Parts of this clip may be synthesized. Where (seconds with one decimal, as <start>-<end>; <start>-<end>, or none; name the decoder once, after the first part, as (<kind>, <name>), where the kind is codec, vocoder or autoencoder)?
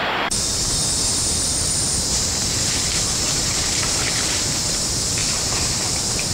0.0-6.3 (vocoder, BigVGAN v2)